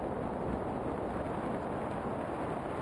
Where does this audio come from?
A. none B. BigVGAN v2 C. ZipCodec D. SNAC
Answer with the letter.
A